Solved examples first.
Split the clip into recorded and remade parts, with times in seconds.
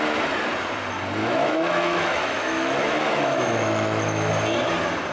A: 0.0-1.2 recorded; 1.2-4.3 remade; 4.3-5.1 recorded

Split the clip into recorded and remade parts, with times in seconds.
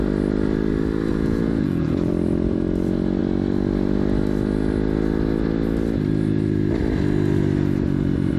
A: 0.0-1.1 recorded; 1.1-2.1 remade; 2.1-8.4 recorded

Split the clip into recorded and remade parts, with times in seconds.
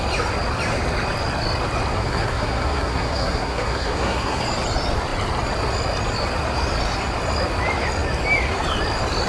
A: 0.0-1.9 recorded; 1.9-4.4 remade; 4.4-9.3 recorded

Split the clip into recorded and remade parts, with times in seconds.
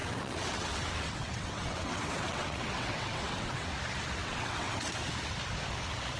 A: 0.0-3.7 remade; 3.7-4.2 recorded; 4.2-5.0 remade; 5.0-6.2 recorded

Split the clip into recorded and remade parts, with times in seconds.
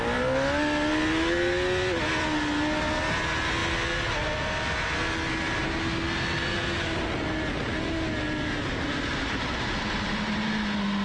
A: 0.0-11.0 recorded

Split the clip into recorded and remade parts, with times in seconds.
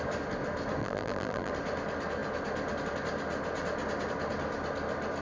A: 0.0-0.8 recorded; 0.8-1.5 remade; 1.5-5.2 recorded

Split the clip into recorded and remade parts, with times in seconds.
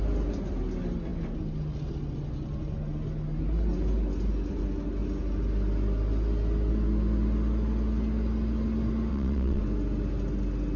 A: 0.0-9.1 recorded; 9.1-9.6 remade; 9.6-10.8 recorded